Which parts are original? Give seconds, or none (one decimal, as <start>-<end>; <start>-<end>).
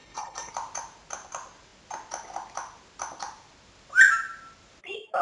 0.5-5.2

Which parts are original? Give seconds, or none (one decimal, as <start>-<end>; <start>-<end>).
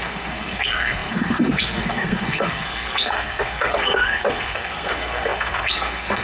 none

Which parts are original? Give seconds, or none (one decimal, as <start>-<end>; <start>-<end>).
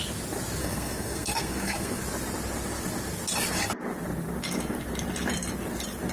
0.0-0.6; 2.0-6.1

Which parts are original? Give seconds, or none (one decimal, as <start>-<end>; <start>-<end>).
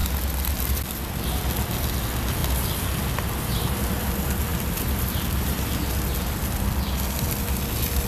0.0-4.5; 5.8-8.1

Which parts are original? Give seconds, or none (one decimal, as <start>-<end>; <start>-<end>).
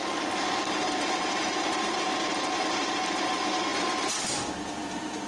none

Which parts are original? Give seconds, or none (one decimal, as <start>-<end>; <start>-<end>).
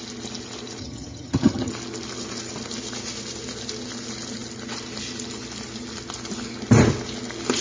0.0-0.8; 1.7-7.6